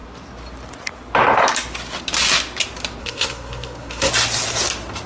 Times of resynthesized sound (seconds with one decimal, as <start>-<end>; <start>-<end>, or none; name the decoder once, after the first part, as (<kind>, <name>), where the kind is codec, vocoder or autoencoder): 3.0-4.1 (codec, SNAC)